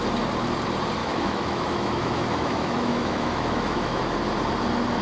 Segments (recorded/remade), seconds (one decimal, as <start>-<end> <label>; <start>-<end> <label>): 0.0-1.0 recorded; 1.0-4.0 remade; 4.0-5.0 recorded